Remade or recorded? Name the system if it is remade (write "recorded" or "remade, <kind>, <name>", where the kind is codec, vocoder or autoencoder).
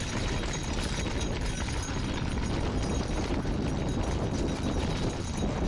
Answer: recorded